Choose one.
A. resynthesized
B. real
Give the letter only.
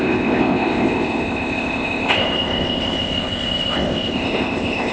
A